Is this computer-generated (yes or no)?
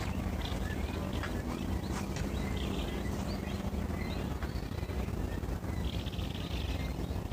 no